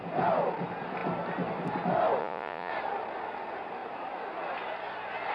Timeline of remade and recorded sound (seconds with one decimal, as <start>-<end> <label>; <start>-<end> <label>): 0.0-2.2 recorded; 2.2-2.7 remade; 2.7-5.3 recorded